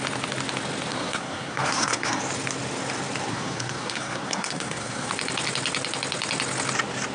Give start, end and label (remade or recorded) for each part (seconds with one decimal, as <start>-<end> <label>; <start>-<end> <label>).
0.0-0.9 recorded; 0.9-2.2 remade; 2.2-3.3 recorded; 3.3-5.1 remade; 5.1-7.1 recorded